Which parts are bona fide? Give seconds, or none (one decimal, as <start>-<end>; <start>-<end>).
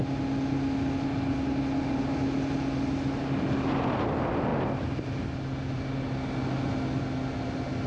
0.0-7.9